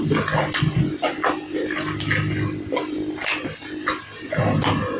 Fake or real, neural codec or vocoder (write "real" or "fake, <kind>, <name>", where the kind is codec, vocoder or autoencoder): real